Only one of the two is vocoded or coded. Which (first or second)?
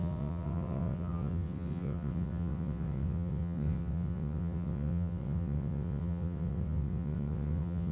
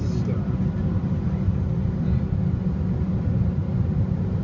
first